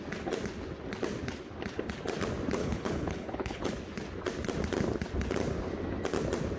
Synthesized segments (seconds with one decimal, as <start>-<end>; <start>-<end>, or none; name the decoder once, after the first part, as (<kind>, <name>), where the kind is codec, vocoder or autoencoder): 2.6-3.7 (codec, HILCodec)